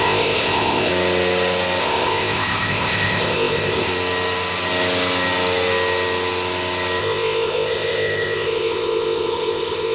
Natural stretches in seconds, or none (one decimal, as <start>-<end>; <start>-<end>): 0.9-1.8; 3.9-7.0